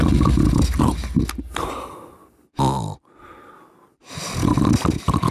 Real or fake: real